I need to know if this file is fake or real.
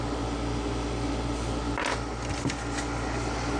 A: real